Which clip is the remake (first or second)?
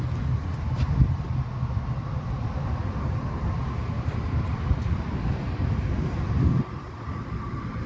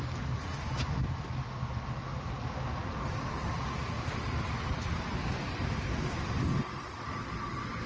first